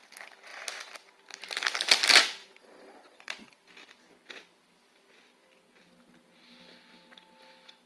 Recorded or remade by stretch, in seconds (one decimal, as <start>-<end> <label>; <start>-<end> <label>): 0.0-2.4 recorded; 2.4-3.6 remade; 3.6-7.9 recorded